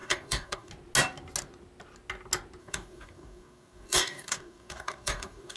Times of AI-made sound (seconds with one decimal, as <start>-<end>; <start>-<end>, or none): 0.0-0.7; 2.6-5.6

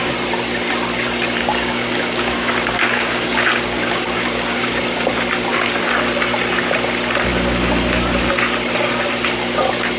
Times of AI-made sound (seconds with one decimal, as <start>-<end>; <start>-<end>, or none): 1.4-4.8

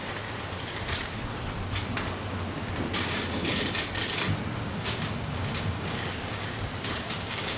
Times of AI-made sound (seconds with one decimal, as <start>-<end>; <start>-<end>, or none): 4.6-7.6

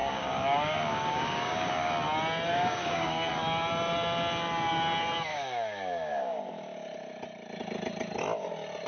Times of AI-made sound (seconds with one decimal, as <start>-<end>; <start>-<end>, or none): 0.0-1.9; 2.5-3.3; 5.3-6.4

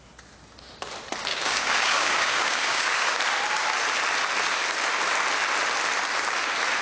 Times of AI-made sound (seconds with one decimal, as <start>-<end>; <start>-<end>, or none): 1.3-3.2